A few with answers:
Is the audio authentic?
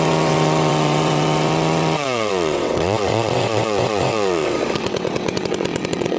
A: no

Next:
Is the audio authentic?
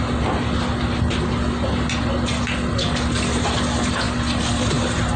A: yes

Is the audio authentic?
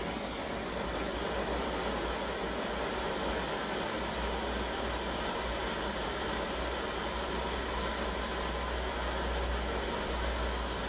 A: yes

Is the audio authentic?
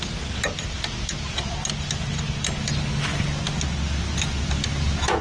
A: yes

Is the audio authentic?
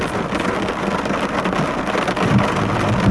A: yes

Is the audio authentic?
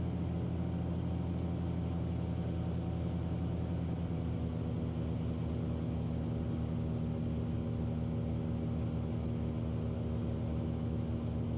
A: yes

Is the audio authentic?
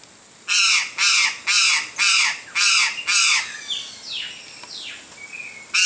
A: yes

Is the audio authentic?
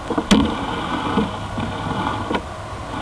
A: yes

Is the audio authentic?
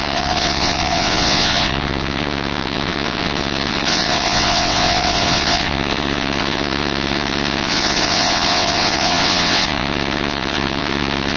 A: no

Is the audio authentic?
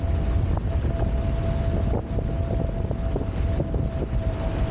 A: yes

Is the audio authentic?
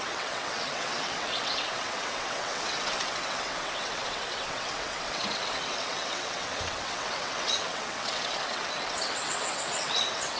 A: no